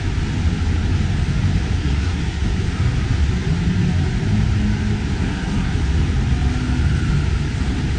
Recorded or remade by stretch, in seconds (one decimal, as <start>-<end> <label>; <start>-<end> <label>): 0.0-1.8 recorded; 1.8-2.6 remade; 2.6-5.2 recorded; 5.2-5.8 remade; 5.8-8.0 recorded

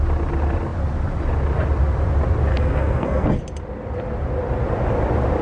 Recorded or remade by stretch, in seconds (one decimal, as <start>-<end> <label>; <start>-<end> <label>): 0.0-2.5 recorded; 2.5-3.4 remade; 3.4-5.4 recorded

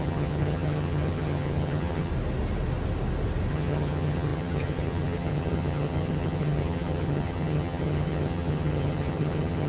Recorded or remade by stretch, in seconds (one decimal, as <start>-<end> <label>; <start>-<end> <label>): 0.0-2.1 remade; 2.1-3.5 recorded; 3.5-9.7 remade

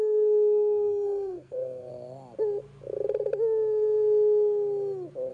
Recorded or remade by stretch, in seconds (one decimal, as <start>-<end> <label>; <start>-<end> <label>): 0.0-1.9 remade; 1.9-5.3 recorded

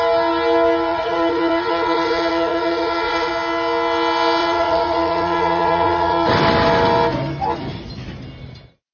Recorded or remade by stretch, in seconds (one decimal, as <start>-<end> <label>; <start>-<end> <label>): 0.0-0.9 recorded; 0.9-3.3 remade; 3.3-4.4 recorded; 4.4-6.3 remade; 6.3-8.9 recorded

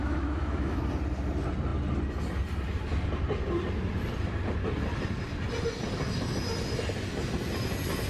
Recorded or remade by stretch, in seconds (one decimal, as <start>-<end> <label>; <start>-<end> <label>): 0.0-0.8 remade; 0.8-8.1 recorded